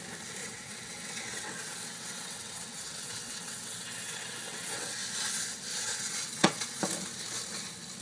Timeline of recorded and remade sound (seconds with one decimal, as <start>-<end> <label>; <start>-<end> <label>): 0.0-0.4 recorded; 0.4-5.0 remade; 5.0-5.7 recorded; 5.7-6.8 remade; 6.8-8.0 recorded